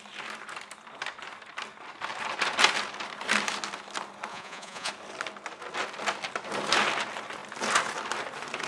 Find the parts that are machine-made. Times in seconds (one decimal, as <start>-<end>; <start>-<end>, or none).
4.3-4.9